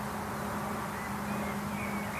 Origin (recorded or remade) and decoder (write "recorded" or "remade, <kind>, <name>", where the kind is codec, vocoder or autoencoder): recorded